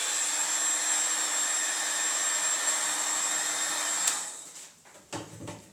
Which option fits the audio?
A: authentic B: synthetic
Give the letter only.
A